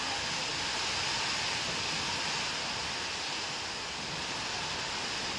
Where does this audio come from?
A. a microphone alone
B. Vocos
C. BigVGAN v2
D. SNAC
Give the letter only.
A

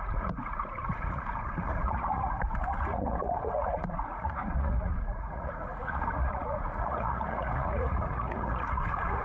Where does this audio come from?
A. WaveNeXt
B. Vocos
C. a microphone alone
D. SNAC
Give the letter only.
B